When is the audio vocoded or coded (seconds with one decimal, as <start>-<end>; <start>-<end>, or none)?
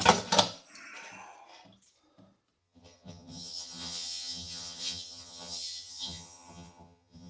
2.6-7.3